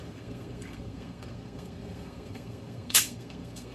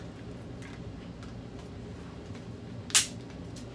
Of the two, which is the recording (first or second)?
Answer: second